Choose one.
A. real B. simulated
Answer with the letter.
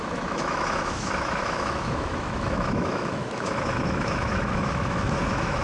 B